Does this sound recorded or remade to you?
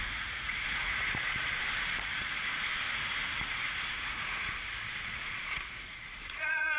remade